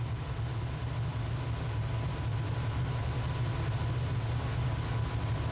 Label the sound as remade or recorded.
recorded